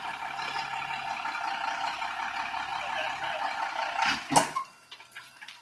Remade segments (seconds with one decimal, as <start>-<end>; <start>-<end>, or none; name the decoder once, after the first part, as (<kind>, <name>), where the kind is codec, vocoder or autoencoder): 2.7-3.6 (vocoder, BigVGAN v2)